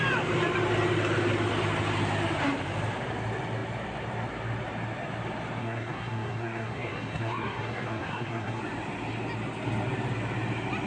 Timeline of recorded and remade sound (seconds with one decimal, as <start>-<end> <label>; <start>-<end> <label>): 0.0-5.6 recorded; 5.6-8.6 remade; 8.6-10.9 recorded